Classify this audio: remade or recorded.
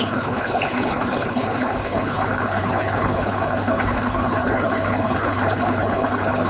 remade